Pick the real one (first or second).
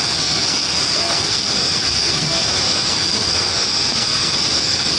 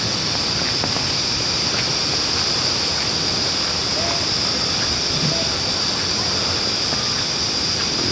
second